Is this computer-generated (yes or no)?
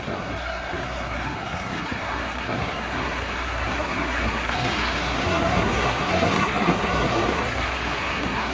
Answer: yes